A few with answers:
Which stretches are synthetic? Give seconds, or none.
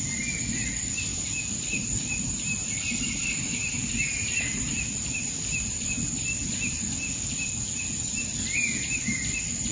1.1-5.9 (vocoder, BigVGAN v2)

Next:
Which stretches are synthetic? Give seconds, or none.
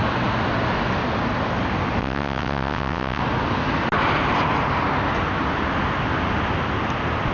2.0-3.2 (vocoder, WaveNeXt)